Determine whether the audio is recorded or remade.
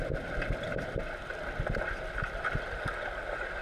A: recorded